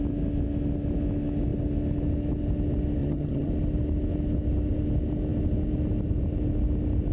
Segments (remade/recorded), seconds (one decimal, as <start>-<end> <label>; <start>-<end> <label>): 0.0-3.0 recorded; 3.0-3.5 remade; 3.5-7.1 recorded